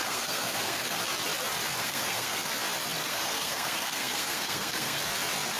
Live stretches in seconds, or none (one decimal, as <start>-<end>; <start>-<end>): 1.0-1.8; 2.5-3.1; 5.0-5.6